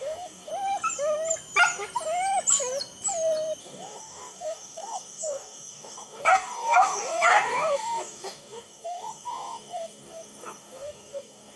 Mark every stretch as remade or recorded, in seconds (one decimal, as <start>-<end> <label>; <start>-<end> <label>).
0.0-0.5 remade; 0.5-3.6 recorded; 3.6-11.6 remade